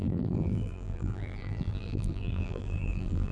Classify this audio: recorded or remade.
remade